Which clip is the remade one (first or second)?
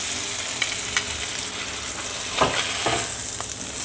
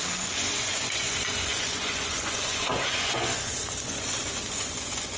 second